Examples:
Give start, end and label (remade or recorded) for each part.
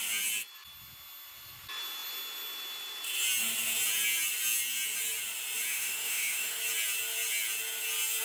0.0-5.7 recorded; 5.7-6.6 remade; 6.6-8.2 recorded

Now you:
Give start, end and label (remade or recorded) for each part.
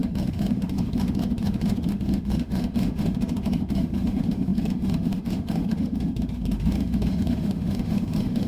0.0-8.5 remade